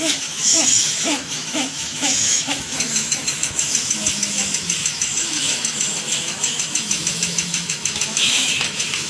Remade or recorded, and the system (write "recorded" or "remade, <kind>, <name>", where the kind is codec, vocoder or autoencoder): remade, autoencoder, DAC-VAE